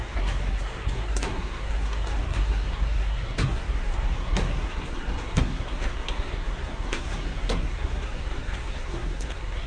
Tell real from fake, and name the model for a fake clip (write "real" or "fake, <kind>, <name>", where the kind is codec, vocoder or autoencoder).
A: fake, codec, SNAC